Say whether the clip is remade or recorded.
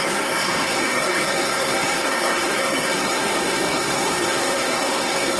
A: remade